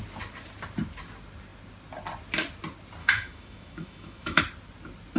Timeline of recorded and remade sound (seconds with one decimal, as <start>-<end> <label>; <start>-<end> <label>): 0.0-3.0 recorded; 3.0-4.4 remade; 4.4-5.2 recorded